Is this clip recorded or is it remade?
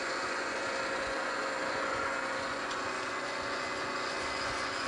remade